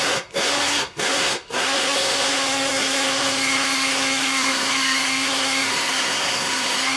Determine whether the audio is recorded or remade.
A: remade